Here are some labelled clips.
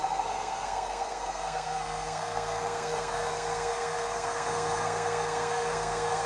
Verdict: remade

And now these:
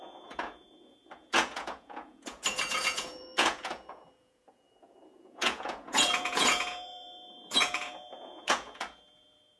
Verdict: remade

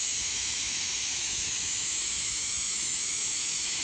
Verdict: remade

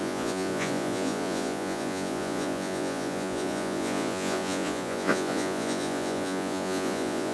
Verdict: remade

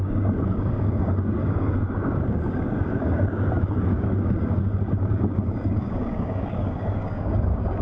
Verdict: remade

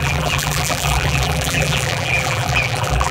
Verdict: remade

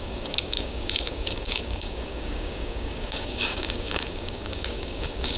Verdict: remade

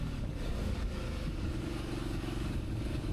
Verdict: remade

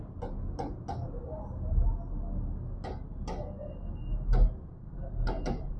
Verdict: recorded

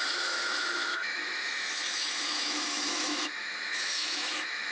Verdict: remade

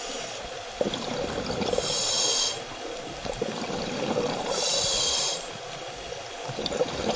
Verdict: recorded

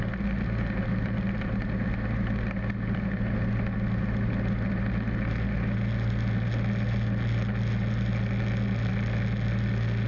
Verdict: recorded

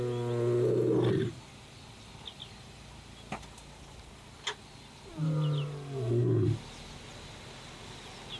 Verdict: recorded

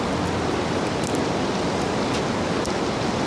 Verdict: recorded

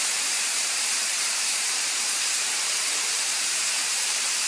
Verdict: remade